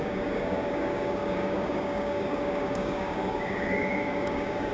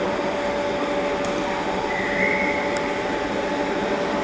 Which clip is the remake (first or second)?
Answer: first